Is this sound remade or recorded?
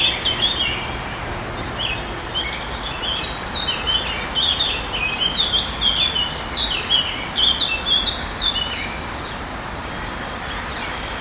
recorded